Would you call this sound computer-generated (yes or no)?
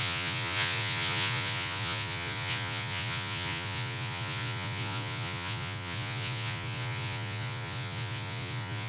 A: yes